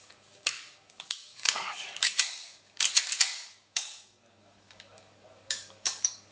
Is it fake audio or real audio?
fake